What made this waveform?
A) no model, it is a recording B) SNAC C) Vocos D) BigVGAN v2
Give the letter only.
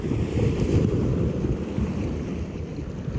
A